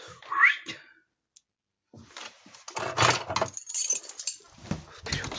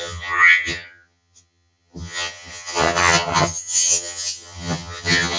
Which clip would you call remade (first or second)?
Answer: second